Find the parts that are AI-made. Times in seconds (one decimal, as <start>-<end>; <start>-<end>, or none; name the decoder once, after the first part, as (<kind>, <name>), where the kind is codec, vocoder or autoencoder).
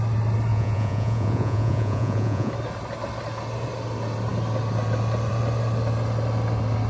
0.5-2.5 (vocoder, Vocos)